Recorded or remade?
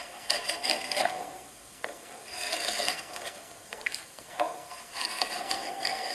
remade